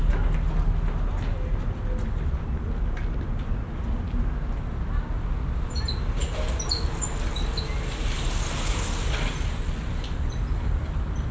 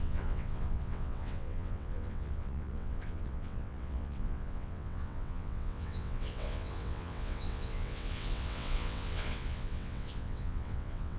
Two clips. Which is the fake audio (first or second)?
second